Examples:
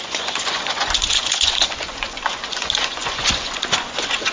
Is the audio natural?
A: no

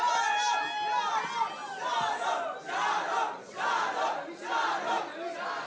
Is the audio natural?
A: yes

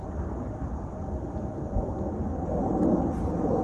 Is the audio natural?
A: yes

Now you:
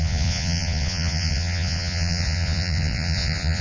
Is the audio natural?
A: no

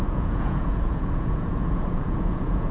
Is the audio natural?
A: no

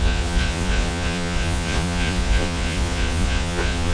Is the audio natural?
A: no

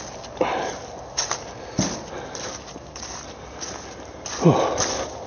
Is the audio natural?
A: yes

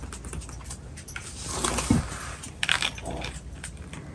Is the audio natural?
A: yes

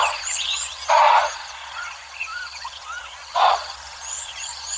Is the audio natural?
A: no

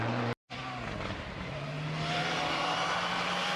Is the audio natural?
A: yes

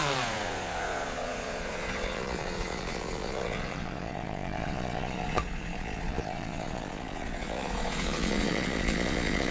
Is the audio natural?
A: no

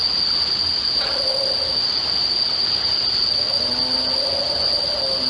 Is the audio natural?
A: yes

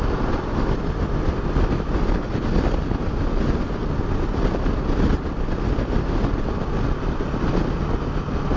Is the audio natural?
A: yes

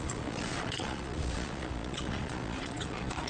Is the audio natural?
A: no